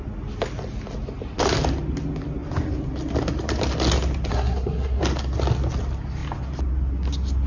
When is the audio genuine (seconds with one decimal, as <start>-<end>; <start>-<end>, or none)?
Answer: 0.0-4.3; 5.0-7.5